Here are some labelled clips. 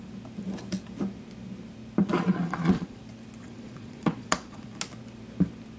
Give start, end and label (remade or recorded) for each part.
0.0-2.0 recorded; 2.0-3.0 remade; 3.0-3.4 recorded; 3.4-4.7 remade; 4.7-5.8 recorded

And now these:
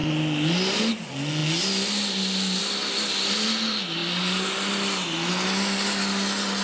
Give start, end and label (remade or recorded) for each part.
0.0-6.6 recorded

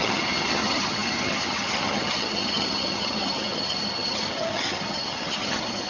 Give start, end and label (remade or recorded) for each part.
0.0-5.9 remade

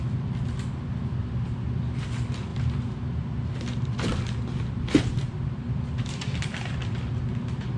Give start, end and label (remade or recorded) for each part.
0.0-7.8 recorded

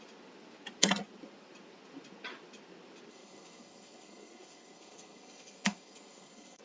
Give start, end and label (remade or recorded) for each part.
0.0-3.1 recorded; 3.1-6.6 remade

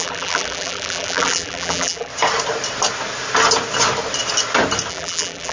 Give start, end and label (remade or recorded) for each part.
0.0-2.1 remade; 2.1-4.9 recorded; 4.9-5.5 remade

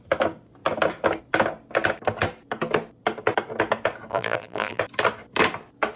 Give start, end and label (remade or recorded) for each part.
0.0-4.1 recorded; 4.1-4.8 remade; 4.8-6.0 recorded

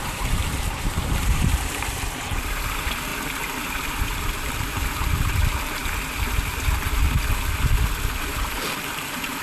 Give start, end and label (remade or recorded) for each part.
0.0-3.1 remade; 3.1-4.0 recorded; 4.0-5.8 remade; 5.8-8.1 recorded; 8.1-9.4 remade